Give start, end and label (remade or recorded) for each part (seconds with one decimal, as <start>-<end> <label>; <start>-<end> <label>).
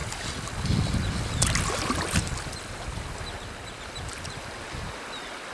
0.0-5.5 recorded